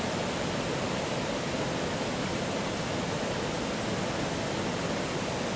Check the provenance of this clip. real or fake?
real